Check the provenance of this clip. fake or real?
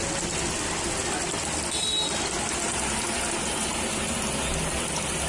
real